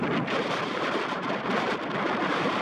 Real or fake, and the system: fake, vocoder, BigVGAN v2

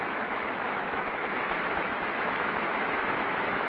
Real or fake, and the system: fake, autoencoder, DAC-VAE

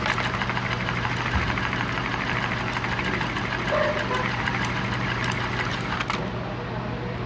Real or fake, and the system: fake, vocoder, BigVGAN v2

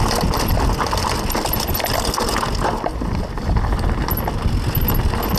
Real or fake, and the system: real